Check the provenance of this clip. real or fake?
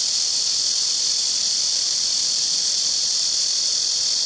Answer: fake